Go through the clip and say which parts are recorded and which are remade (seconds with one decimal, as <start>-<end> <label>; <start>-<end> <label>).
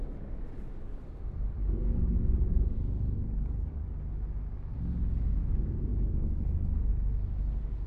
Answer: 0.0-1.6 recorded; 1.6-4.0 remade; 4.0-5.9 recorded; 5.9-6.9 remade; 6.9-7.9 recorded